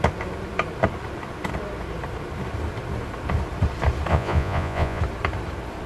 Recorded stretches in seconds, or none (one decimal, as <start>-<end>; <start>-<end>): 0.0-4.1; 5.0-5.9